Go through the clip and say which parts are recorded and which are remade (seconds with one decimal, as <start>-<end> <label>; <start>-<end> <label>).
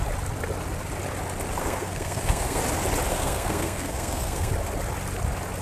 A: 0.0-1.6 recorded; 1.6-2.6 remade; 2.6-3.1 recorded; 3.1-4.5 remade; 4.5-5.6 recorded